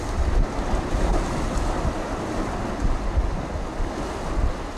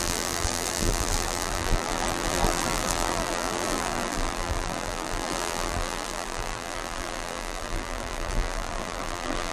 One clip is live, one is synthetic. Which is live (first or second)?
first